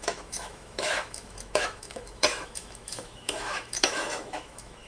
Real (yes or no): no